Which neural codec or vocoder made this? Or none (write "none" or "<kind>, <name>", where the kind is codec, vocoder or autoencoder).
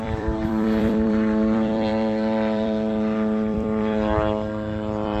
vocoder, BigVGAN v2